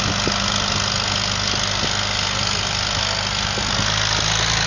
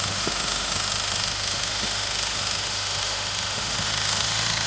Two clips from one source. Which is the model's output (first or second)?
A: second